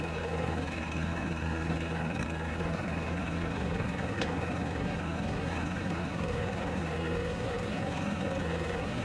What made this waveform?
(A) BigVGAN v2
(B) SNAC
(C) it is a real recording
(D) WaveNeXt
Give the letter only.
B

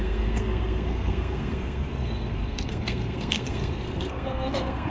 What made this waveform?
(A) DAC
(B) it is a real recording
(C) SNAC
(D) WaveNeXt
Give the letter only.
C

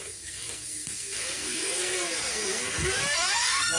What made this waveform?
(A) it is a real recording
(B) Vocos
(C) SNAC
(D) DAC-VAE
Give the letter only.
C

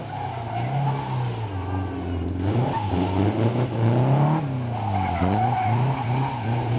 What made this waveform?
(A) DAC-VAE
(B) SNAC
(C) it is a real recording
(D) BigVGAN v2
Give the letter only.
C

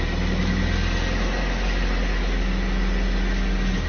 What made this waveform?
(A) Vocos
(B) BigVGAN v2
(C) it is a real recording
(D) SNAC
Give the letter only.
C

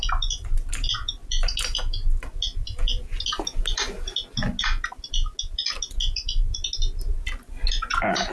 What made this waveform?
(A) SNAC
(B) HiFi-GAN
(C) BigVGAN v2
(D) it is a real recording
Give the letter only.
D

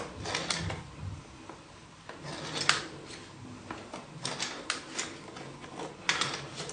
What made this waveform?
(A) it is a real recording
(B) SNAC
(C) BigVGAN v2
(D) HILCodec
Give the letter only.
A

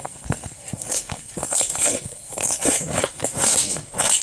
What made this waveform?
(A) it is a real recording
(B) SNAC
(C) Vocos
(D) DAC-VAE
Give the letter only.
B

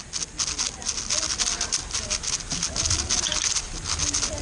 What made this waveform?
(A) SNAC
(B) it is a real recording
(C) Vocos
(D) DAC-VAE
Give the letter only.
B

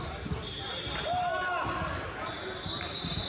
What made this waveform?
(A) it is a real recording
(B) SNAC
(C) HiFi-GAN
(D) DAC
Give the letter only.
A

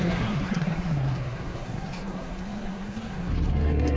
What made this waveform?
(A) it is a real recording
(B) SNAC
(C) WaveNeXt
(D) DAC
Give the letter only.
B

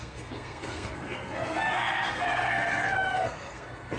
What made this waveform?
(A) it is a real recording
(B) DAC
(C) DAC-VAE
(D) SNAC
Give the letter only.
D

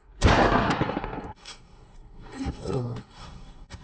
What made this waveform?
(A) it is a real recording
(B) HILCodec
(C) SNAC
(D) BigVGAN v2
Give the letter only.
C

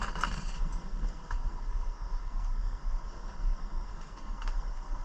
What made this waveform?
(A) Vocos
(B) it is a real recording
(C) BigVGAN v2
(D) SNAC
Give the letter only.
D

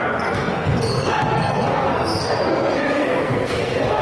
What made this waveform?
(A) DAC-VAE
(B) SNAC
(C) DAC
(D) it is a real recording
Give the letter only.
B